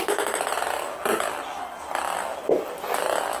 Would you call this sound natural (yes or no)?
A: yes